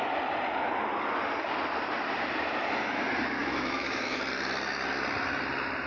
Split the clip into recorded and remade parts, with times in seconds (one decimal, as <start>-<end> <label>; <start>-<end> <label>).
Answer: 0.0-3.4 recorded; 3.4-4.2 remade; 4.2-5.9 recorded